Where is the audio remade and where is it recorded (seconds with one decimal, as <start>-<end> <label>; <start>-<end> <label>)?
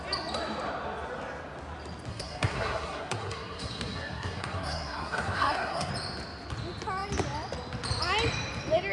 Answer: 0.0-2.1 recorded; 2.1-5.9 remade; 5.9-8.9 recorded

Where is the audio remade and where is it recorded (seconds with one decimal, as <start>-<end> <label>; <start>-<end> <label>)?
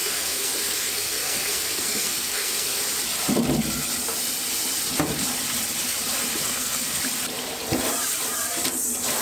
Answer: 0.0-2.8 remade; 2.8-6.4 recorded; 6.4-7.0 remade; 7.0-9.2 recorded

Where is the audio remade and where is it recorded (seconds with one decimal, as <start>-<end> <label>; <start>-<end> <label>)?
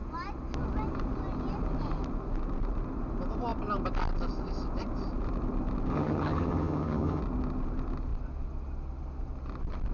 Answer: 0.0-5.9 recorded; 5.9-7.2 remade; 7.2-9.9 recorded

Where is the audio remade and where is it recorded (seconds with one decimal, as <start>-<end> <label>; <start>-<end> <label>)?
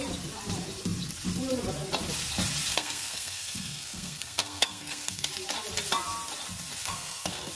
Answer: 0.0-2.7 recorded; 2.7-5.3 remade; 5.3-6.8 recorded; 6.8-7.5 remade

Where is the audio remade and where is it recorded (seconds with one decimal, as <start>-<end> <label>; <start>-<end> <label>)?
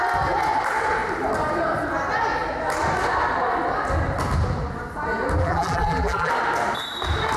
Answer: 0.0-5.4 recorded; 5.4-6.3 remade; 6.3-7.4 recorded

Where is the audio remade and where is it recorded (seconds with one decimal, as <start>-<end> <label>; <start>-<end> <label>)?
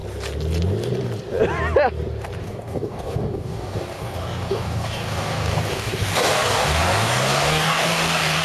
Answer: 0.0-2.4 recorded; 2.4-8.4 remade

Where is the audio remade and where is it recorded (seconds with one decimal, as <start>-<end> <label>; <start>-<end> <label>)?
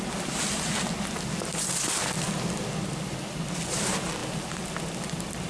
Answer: 0.0-5.5 recorded